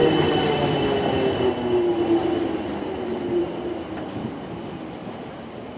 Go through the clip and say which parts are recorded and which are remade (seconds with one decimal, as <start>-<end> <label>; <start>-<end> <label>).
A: 0.0-0.8 remade; 0.8-2.2 recorded; 2.2-3.4 remade; 3.4-5.0 recorded; 5.0-5.8 remade